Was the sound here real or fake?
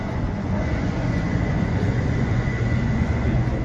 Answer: fake